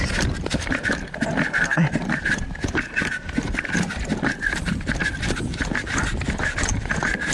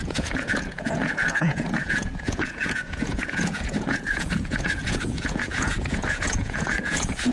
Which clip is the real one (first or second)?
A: first